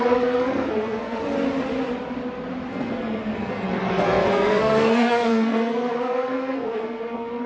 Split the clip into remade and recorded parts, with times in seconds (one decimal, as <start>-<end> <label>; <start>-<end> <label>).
0.0-1.2 remade; 1.2-2.7 recorded; 2.7-7.5 remade

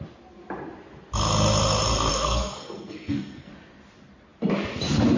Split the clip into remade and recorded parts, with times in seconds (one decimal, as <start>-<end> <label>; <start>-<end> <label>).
0.0-2.1 recorded; 2.1-3.5 remade; 3.5-5.2 recorded

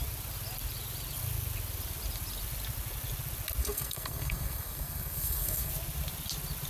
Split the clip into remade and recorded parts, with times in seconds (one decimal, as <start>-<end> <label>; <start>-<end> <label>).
0.0-3.6 recorded; 3.6-5.7 remade; 5.7-6.7 recorded

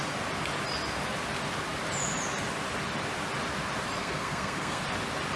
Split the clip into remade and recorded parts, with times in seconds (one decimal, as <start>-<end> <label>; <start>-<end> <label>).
0.0-4.0 recorded; 4.0-4.8 remade; 4.8-5.4 recorded